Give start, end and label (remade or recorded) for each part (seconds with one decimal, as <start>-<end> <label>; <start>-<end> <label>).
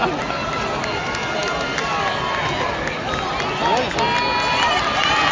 0.0-5.3 recorded